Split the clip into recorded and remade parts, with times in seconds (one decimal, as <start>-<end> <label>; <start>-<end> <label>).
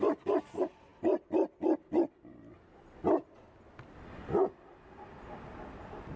0.0-6.2 recorded